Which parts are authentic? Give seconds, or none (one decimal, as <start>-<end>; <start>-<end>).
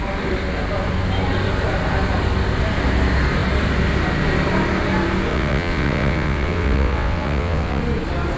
0.0-5.3; 7.8-8.4